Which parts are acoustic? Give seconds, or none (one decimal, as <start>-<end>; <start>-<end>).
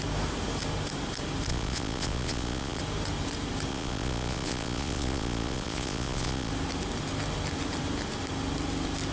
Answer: 0.0-1.5; 2.8-3.7; 6.5-9.1